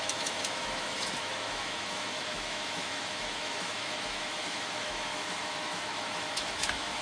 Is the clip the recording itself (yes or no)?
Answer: no